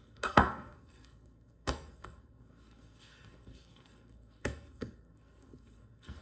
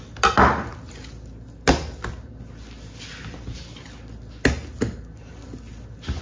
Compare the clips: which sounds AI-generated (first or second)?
first